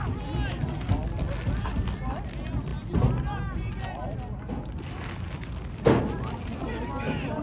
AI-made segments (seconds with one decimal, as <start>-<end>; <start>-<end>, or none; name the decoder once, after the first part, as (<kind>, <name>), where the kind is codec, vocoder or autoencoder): none